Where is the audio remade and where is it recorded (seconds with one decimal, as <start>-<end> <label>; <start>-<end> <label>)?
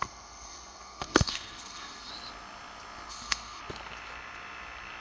0.0-2.1 remade; 2.1-3.1 recorded; 3.1-3.6 remade; 3.6-5.0 recorded